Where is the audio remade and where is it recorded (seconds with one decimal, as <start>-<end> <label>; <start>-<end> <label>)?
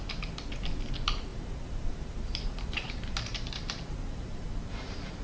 0.0-1.3 recorded; 1.3-4.4 remade; 4.4-5.2 recorded